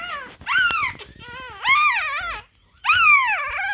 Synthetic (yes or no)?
no